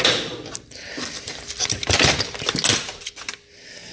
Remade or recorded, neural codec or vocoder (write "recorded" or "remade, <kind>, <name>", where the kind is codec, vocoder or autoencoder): recorded